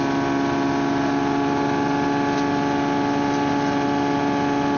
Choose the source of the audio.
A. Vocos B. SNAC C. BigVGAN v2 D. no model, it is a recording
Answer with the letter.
D